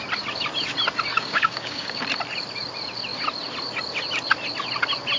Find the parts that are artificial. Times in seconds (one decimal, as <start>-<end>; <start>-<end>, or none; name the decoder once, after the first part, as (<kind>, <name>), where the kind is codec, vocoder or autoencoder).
1.1-2.0 (codec, DAC)